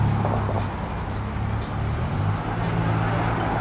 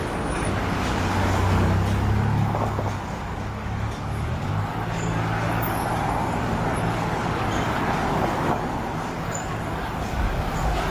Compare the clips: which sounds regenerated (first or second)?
second